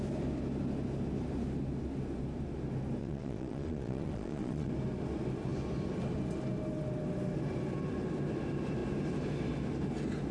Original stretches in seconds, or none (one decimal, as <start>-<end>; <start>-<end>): 0.0-3.0; 4.7-10.3